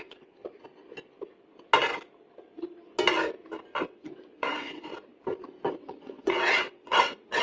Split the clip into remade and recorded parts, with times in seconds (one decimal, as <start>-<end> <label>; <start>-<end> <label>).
0.0-0.4 remade; 0.4-3.8 recorded; 3.8-4.9 remade; 4.9-5.7 recorded; 5.7-7.4 remade